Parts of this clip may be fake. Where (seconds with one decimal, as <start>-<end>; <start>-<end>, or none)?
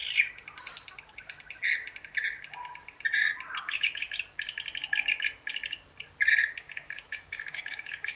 3.6-4.0; 6.6-8.2